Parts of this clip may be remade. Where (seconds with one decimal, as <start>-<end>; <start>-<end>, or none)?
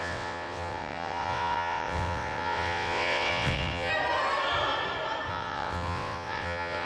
0.0-3.9; 5.3-6.8